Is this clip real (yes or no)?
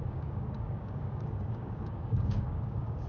no